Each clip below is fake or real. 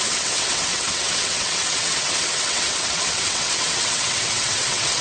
fake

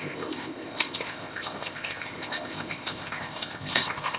fake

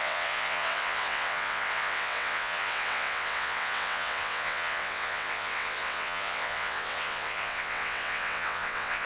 fake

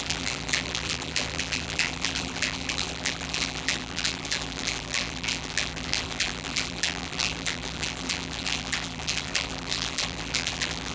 fake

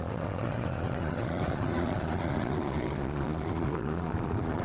fake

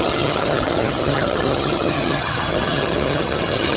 fake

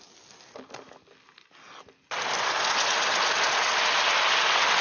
real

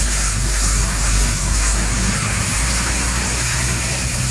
fake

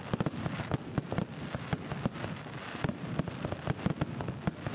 real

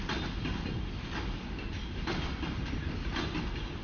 real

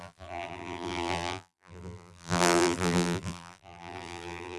fake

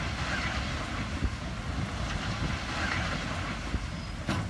real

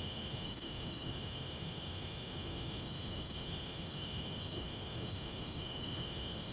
fake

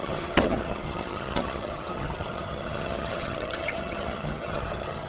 fake